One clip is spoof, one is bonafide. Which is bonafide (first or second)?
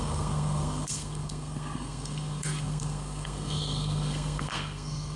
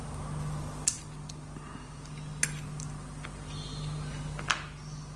second